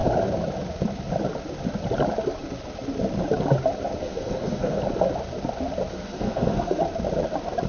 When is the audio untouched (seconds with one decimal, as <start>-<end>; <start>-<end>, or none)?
0.0-4.0; 4.8-5.9; 6.8-7.7